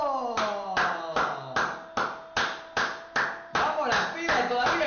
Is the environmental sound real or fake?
real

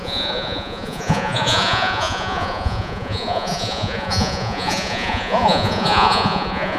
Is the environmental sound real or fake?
fake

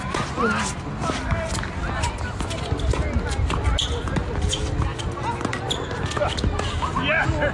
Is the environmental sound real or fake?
real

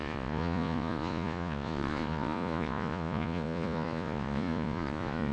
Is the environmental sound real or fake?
fake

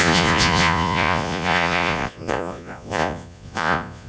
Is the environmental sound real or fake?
fake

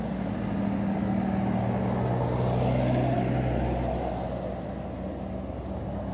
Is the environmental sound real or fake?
real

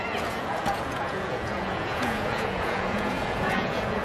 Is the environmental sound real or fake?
fake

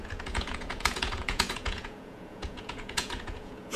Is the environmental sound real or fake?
fake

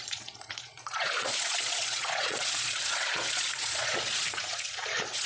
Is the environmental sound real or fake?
fake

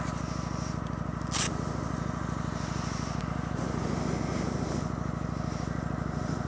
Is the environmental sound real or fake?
real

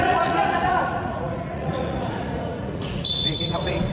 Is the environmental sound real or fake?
fake